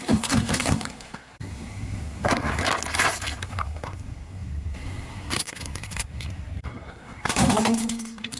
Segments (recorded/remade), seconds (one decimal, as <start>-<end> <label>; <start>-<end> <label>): 0.0-2.6 remade; 2.6-3.4 recorded; 3.4-8.4 remade